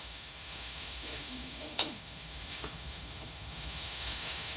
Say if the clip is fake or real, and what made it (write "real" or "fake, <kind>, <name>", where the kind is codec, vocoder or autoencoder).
fake, autoencoder, DAC-VAE